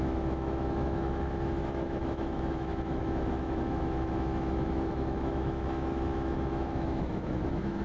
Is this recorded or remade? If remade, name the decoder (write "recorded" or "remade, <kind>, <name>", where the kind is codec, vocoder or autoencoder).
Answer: remade, autoencoder, DAC-VAE